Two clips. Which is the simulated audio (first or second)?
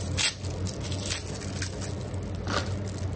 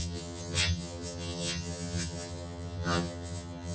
second